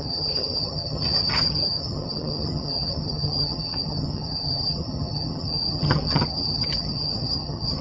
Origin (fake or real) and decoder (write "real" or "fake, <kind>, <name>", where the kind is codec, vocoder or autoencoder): fake, vocoder, HiFi-GAN